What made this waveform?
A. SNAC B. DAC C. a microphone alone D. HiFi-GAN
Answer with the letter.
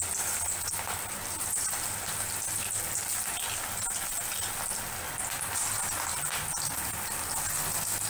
C